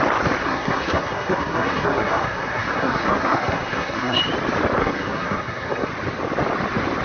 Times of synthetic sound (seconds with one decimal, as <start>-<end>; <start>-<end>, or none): 0.4-4.2; 4.8-5.9